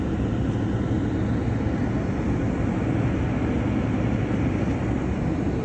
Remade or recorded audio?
recorded